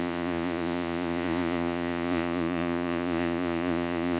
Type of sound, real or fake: fake